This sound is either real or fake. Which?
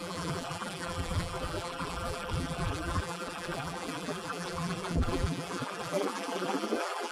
fake